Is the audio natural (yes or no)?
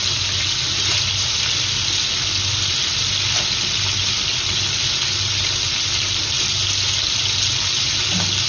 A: yes